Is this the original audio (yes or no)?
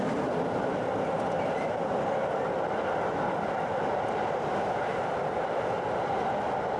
yes